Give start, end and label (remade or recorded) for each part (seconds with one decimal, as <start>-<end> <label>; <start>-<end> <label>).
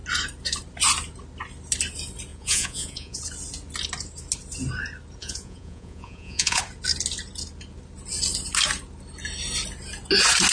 0.0-2.3 recorded; 2.3-3.2 remade; 3.2-5.2 recorded; 5.2-6.6 remade; 6.6-10.5 recorded